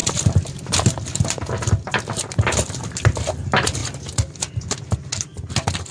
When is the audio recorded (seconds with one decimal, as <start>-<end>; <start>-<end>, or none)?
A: 0.0-5.9